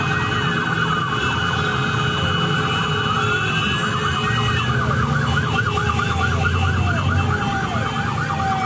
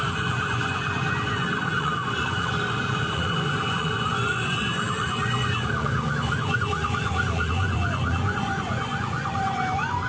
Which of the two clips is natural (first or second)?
first